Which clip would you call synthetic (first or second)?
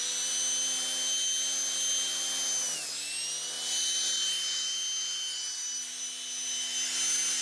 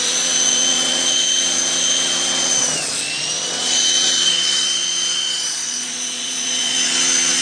second